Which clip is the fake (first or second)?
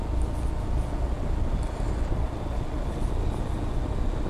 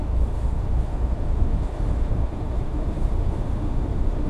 second